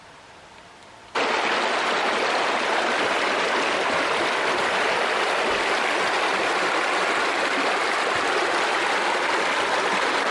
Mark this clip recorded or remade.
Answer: recorded